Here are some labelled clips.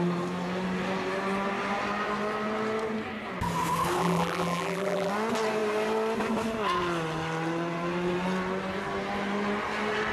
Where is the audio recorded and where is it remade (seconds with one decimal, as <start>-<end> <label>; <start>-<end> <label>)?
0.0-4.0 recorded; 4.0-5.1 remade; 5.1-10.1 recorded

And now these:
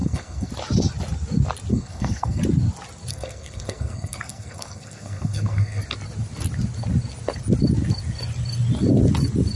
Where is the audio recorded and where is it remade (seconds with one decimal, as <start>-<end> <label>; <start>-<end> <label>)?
0.0-0.5 remade; 0.5-1.7 recorded; 1.7-2.4 remade; 2.4-3.1 recorded; 3.1-5.8 remade; 5.8-9.6 recorded

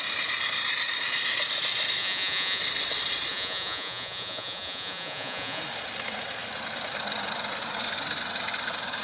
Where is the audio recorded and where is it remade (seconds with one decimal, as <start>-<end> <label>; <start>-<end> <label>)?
0.0-2.0 recorded; 2.0-2.6 remade; 2.6-3.3 recorded; 3.3-5.6 remade; 5.6-9.0 recorded

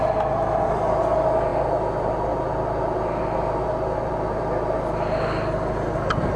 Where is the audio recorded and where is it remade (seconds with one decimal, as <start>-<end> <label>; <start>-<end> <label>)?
0.0-6.4 recorded

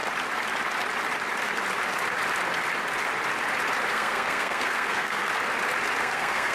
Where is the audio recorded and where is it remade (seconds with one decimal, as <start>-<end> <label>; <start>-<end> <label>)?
0.0-3.9 recorded; 3.9-5.3 remade; 5.3-6.0 recorded; 6.0-6.5 remade

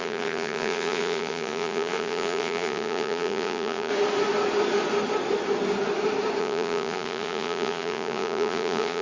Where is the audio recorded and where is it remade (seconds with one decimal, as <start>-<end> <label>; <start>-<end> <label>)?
0.0-3.9 remade; 3.9-6.4 recorded; 6.4-9.0 remade

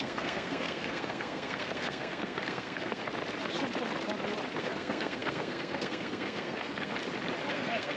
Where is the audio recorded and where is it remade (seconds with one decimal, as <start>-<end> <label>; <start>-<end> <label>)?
0.0-3.0 remade; 3.0-4.6 recorded; 4.6-6.9 remade; 6.9-7.5 recorded; 7.5-8.0 remade

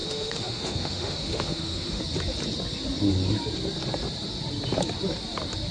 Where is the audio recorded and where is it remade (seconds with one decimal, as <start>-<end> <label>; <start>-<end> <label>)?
0.0-2.0 remade; 2.0-5.7 recorded